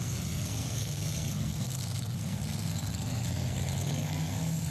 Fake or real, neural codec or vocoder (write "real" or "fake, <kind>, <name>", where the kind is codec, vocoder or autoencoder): fake, codec, SNAC